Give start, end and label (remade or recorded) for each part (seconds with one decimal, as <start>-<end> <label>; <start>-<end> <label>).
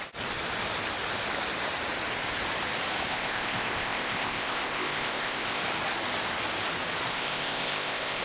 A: 0.0-3.1 recorded; 3.1-5.6 remade; 5.6-7.1 recorded; 7.1-8.2 remade